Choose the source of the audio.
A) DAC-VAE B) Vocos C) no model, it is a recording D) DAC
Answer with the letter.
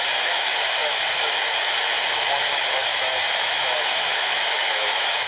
A